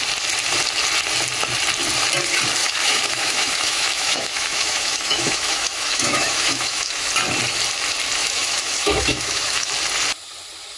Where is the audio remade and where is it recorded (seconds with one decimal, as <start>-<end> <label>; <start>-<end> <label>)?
0.0-2.6 recorded; 2.6-7.1 remade; 7.1-8.2 recorded; 8.2-9.7 remade; 9.7-10.8 recorded